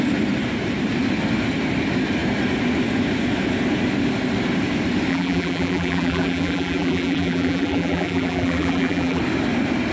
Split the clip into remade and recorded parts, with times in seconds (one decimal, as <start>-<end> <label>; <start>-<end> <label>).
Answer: 0.0-5.1 recorded; 5.1-9.2 remade; 9.2-9.9 recorded